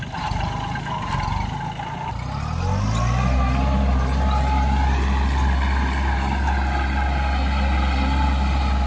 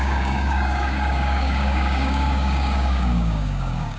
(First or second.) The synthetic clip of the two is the second